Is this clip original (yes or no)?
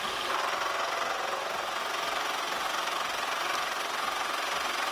yes